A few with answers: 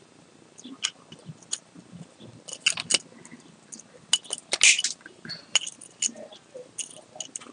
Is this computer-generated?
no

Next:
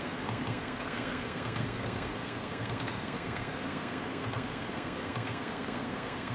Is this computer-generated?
yes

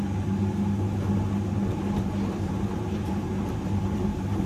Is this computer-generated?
no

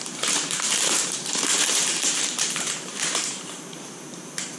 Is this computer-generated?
yes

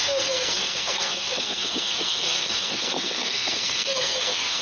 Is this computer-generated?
yes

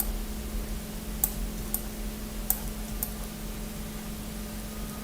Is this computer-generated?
no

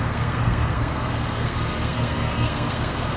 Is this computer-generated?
yes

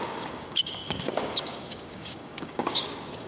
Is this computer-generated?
yes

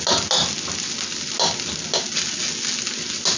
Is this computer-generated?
no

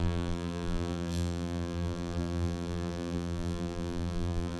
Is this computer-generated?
yes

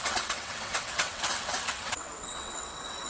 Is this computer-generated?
yes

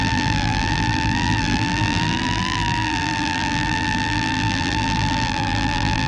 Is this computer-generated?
yes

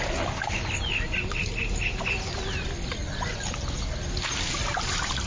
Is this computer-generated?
no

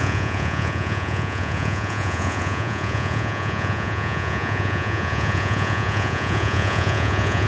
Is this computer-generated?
yes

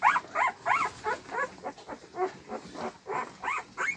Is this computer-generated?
no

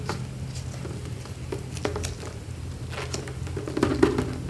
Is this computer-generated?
no